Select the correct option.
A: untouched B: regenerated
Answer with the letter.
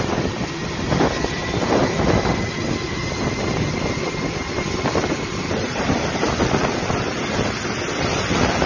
B